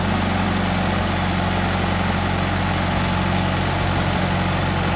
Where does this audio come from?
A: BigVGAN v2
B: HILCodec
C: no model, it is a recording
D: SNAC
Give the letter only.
C